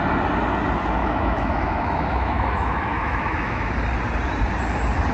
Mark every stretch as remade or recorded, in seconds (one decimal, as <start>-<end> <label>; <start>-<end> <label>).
0.0-1.0 recorded; 1.0-3.7 remade; 3.7-5.1 recorded